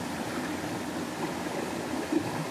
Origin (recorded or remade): recorded